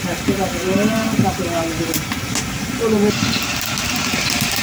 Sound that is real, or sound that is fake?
real